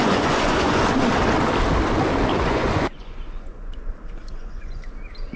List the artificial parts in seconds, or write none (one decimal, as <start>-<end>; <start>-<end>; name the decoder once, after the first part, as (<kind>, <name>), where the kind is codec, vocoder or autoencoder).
0.0-0.8 (vocoder, Vocos); 2.3-3.7; 4.2-4.9